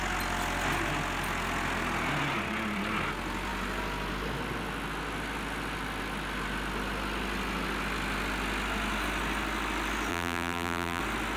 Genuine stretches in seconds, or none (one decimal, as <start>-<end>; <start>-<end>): 0.0-10.1; 11.0-11.4